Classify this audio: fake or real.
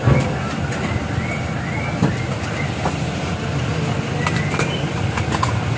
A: real